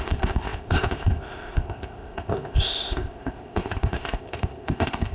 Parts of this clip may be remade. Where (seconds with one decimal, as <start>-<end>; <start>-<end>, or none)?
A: 0.0-5.1